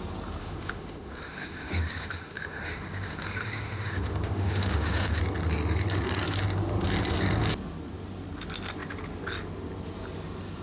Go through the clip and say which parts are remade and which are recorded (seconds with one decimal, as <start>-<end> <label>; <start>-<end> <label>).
0.0-0.4 recorded; 0.4-5.2 remade; 5.2-10.6 recorded